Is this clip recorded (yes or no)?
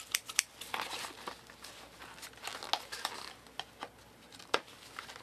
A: yes